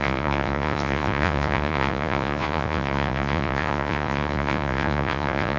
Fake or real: fake